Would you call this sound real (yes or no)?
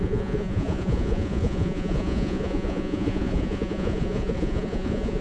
no